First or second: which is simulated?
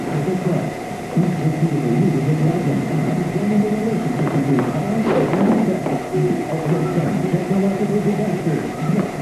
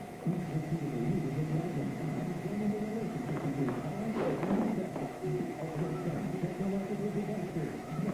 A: second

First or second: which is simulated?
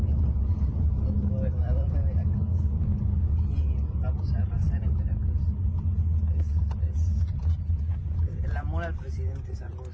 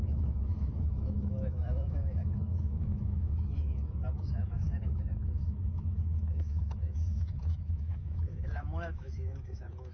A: second